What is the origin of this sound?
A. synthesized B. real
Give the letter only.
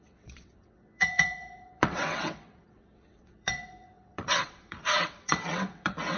A